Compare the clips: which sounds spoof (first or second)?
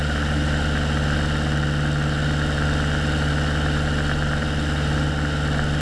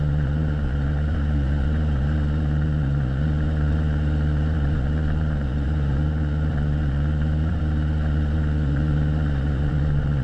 second